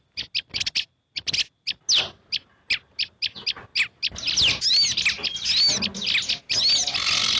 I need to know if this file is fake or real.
real